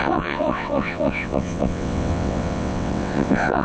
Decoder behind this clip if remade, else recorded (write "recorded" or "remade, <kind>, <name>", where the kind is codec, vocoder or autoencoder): remade, vocoder, WaveNeXt